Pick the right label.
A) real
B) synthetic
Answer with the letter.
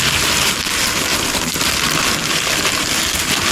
A